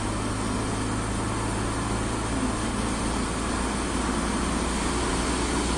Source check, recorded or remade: recorded